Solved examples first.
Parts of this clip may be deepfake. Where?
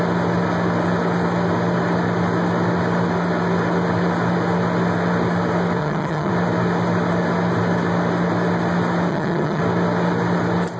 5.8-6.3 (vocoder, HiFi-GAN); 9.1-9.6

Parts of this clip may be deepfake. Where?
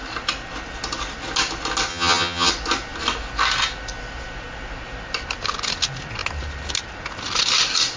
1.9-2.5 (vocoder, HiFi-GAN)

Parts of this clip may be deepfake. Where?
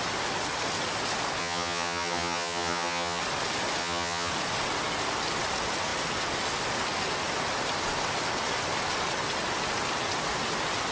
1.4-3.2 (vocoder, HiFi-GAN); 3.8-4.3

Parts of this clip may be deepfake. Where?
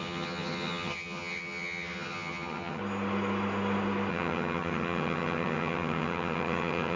0.0-2.8 (vocoder, HiFi-GAN); 4.1-7.0